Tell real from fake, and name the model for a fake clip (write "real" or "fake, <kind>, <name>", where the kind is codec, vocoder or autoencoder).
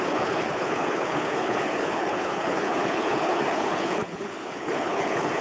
fake, codec, HILCodec